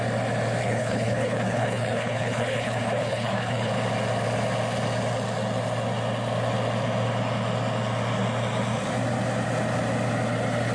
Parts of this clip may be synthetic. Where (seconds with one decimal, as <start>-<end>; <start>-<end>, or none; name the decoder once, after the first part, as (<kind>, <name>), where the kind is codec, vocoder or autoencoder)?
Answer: 0.6-3.7 (codec, HILCodec)